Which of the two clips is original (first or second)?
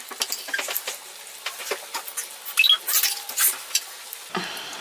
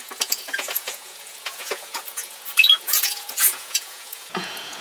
first